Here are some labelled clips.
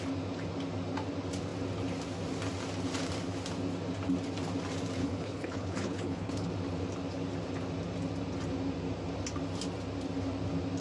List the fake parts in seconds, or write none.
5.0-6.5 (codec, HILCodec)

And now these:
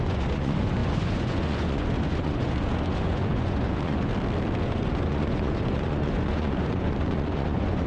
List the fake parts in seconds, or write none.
0.0-4.1 (vocoder, Vocos); 4.6-7.9

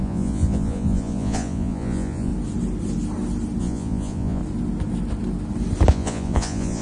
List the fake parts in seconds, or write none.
0.0-2.3 (vocoder, Vocos); 3.6-4.4; 5.9-6.8

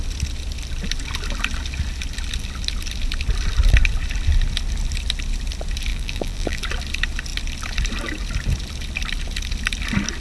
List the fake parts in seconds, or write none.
5.9-6.6 (vocoder, BigVGAN v2)

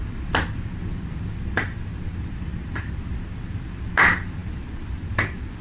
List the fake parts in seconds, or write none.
0.0-5.6 (vocoder, BigVGAN v2)